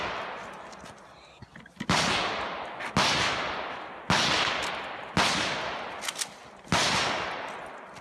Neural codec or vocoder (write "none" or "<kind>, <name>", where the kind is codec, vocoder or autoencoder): none